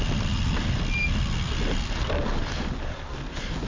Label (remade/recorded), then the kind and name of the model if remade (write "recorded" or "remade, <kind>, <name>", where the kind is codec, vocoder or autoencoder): recorded